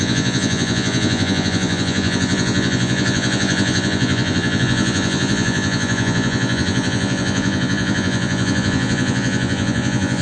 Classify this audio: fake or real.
fake